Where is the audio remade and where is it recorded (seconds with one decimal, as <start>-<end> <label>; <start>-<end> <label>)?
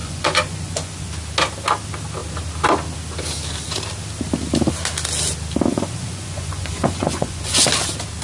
0.0-1.1 remade; 1.1-5.7 recorded; 5.7-7.6 remade; 7.6-8.2 recorded